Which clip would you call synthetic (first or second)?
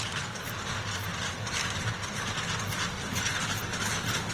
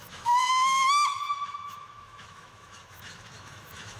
second